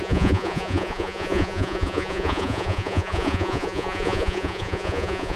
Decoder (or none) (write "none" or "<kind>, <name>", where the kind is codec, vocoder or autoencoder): vocoder, Vocos